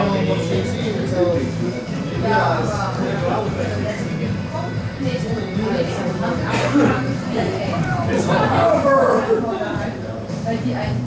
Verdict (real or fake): fake